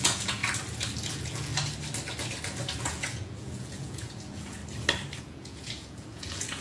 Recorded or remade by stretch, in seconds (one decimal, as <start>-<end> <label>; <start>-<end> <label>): 0.0-0.4 remade; 0.4-1.1 recorded; 1.1-1.5 remade; 1.5-2.8 recorded; 2.8-4.6 remade; 4.6-5.2 recorded; 5.2-6.6 remade